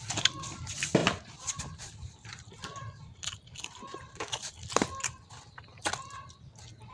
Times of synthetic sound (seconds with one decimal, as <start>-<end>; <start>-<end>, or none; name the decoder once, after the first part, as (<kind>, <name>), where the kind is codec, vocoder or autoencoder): none

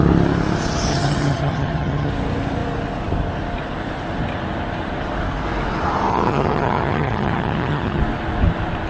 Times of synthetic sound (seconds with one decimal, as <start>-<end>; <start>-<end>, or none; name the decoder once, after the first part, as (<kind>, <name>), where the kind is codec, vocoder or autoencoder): 0.9-2.1 (vocoder, HiFi-GAN); 6.1-8.0

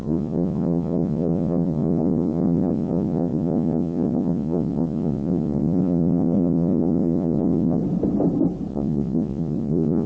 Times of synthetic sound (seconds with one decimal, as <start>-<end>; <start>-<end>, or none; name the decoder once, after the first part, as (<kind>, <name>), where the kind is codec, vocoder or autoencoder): 0.0-7.8 (vocoder, Vocos); 8.7-10.1

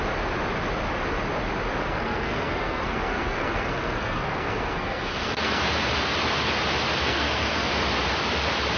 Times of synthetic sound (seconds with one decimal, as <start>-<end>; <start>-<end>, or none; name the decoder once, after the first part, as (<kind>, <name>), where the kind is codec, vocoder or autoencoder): 1.8-5.6 (codec, SNAC); 7.0-7.7

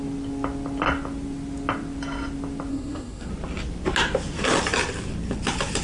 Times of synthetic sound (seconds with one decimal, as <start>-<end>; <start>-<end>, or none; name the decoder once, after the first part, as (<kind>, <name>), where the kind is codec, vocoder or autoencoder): 2.7-3.3 (codec, SNAC)

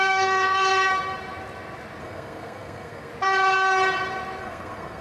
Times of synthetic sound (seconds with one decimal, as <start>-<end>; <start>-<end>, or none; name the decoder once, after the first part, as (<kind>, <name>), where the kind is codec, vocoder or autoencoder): 0.0-0.9 (codec, SNAC); 2.0-3.1; 4.4-5.0

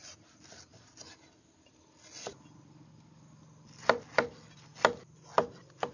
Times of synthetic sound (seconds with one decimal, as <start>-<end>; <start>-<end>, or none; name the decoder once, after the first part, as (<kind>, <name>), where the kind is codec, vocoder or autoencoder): none

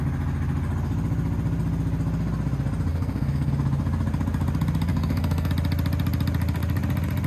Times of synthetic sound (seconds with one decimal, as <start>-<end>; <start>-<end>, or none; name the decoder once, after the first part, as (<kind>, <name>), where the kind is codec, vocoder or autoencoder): 2.9-3.5 (codec, SNAC); 4.9-5.5